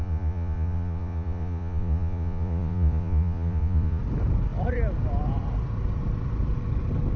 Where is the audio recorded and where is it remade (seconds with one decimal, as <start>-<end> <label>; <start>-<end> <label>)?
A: 0.0-4.0 remade; 4.0-7.2 recorded

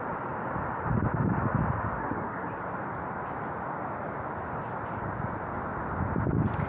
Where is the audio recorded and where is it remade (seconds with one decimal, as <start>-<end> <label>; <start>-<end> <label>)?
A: 0.0-2.0 recorded; 2.0-2.6 remade; 2.6-6.7 recorded

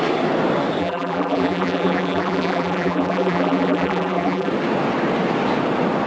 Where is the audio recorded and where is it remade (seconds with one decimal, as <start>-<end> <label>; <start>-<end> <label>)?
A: 0.0-0.8 recorded; 0.8-4.5 remade; 4.5-6.1 recorded

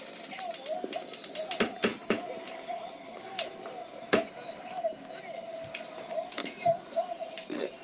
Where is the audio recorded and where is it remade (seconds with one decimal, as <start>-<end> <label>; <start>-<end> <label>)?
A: 0.0-6.4 recorded; 6.4-7.8 remade

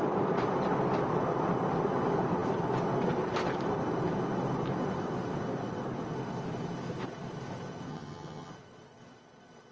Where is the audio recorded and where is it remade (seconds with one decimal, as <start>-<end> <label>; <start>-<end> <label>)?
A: 0.0-7.9 recorded; 7.9-8.5 remade; 8.5-9.7 recorded